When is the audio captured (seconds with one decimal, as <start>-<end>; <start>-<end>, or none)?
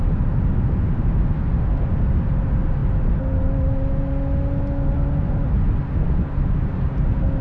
0.0-7.4